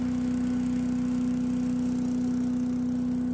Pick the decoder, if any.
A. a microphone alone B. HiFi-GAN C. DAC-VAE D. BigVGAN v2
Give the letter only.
A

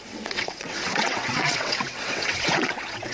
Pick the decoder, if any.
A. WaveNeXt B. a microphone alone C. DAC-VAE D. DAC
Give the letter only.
A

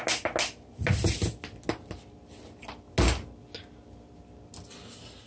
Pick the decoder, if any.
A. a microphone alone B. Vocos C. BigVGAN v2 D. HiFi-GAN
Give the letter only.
A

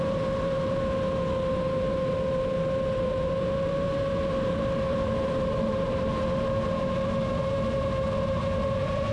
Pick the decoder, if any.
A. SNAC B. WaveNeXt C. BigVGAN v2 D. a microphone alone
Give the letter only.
C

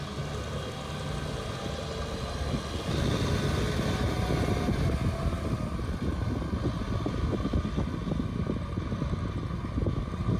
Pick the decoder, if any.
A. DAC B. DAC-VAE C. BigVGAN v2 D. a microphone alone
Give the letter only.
D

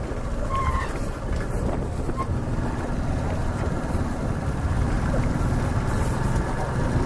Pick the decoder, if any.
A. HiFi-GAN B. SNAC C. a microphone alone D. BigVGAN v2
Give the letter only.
C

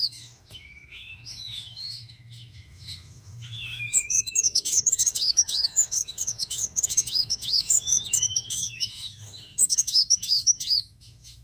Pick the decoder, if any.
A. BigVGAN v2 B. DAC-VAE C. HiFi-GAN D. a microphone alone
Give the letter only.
B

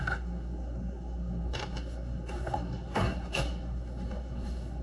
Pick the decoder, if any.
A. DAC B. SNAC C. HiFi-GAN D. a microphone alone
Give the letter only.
B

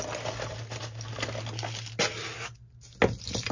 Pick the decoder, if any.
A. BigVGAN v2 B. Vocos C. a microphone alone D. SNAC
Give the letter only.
C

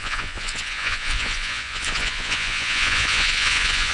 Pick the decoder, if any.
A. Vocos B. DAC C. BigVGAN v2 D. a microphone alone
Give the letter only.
A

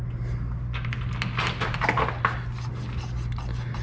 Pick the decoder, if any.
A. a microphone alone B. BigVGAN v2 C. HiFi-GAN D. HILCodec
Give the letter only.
A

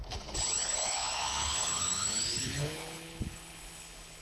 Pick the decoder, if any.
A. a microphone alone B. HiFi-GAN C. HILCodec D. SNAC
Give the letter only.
C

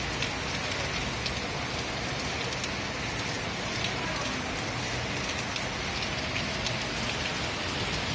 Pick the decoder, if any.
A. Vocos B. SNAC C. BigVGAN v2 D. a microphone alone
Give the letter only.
D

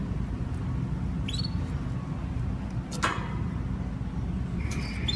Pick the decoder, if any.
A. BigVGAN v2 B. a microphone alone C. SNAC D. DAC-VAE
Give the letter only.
B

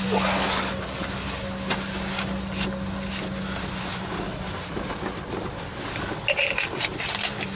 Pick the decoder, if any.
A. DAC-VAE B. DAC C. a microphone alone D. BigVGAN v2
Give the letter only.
C